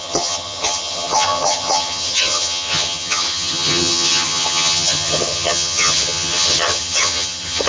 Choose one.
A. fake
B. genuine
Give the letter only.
A